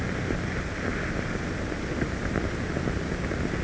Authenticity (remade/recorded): recorded